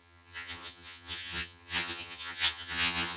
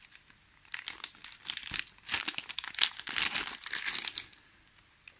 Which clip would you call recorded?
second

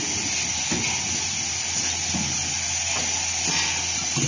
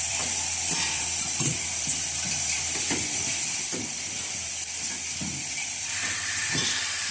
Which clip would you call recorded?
first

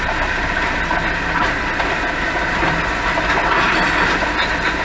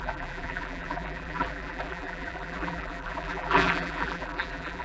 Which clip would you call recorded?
first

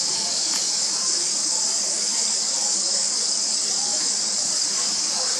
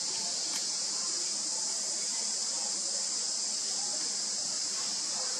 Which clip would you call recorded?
second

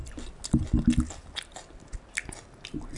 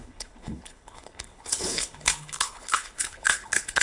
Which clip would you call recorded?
first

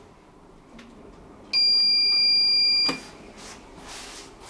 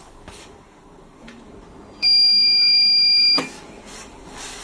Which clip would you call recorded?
first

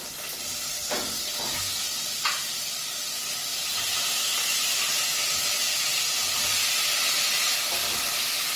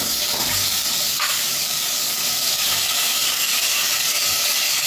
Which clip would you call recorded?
first